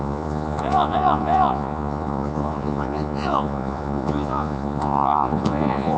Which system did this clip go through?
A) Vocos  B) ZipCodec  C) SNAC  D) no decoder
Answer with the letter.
A